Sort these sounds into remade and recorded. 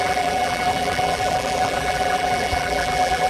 remade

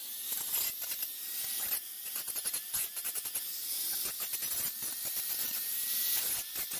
recorded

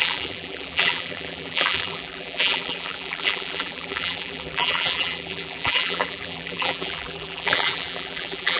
remade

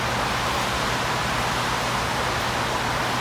recorded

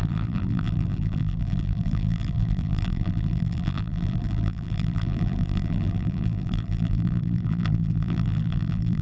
remade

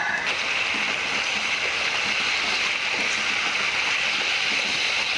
recorded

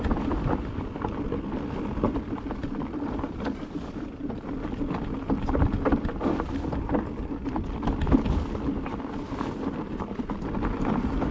remade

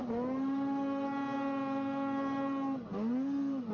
recorded